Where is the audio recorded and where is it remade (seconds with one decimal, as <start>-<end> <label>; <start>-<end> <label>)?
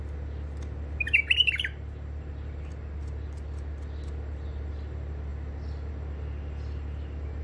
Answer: 0.0-7.4 recorded